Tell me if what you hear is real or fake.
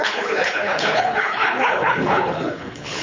fake